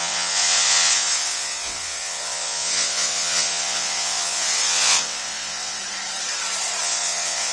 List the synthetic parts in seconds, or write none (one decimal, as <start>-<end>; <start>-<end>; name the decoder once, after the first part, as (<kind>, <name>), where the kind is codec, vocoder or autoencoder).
0.0-5.8 (vocoder, WaveNeXt); 6.8-7.5